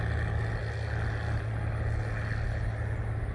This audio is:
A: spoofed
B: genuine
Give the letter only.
B